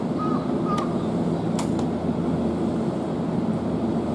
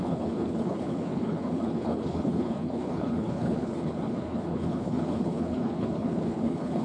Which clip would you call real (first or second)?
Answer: first